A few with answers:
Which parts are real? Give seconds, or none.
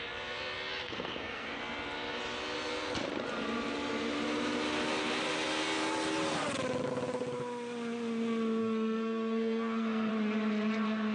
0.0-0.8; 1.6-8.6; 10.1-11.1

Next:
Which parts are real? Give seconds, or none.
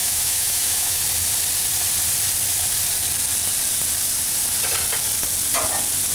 1.0-6.1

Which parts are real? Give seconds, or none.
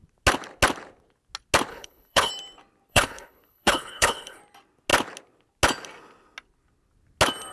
0.0-1.7; 2.3-2.9; 4.4-7.5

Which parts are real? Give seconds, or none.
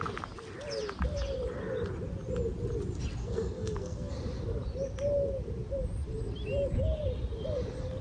0.0-3.2; 4.1-8.0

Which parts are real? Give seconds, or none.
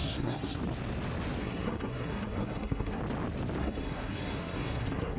0.6-1.4; 3.0-3.6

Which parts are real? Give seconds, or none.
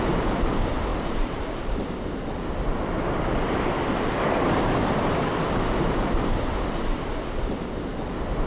0.0-0.9; 1.7-8.5